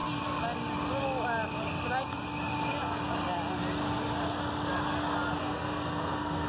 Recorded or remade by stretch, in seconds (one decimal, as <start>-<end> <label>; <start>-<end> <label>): 0.0-5.4 recorded; 5.4-6.5 remade